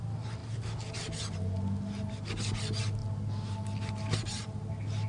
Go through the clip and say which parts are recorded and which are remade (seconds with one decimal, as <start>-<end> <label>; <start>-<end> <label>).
0.0-5.1 recorded